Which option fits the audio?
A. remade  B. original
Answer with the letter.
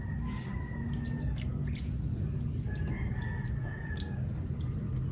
B